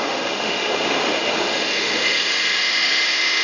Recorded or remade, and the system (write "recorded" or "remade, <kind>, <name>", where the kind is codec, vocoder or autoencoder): remade, autoencoder, DAC-VAE